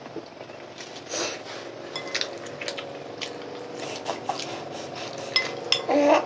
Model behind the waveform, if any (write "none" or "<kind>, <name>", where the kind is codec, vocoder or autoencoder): none